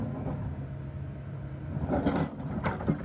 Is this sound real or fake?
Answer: real